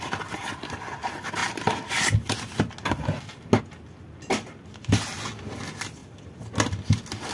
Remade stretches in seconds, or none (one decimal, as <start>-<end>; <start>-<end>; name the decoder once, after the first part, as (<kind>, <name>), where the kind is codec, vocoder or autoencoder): none